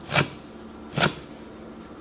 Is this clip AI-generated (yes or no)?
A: no